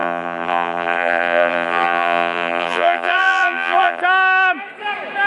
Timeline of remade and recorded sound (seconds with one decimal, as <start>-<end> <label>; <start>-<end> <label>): 0.0-4.0 remade; 4.0-5.3 recorded